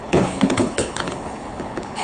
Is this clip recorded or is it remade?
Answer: remade